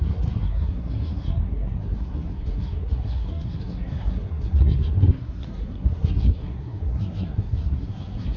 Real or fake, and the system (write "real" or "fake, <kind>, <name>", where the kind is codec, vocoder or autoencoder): fake, codec, SNAC